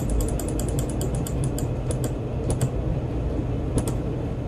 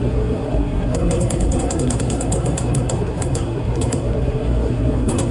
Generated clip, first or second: second